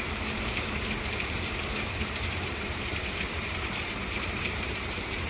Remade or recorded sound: remade